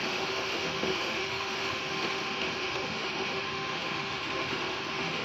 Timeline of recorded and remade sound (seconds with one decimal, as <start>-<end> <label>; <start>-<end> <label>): 0.0-5.2 remade